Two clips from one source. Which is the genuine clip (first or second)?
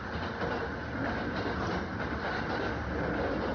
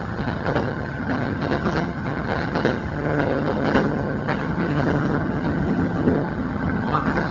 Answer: first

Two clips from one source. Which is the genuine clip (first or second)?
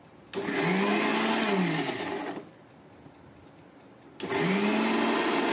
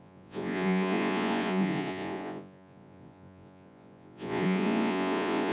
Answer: first